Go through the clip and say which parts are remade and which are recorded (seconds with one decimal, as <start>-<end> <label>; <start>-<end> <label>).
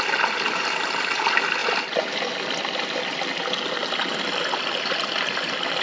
0.0-5.8 recorded